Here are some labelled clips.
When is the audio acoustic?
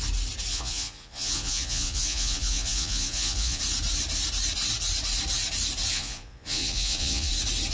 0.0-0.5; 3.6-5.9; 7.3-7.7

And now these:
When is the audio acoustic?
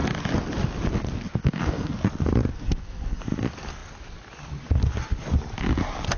0.0-1.4; 2.0-2.5; 3.2-6.2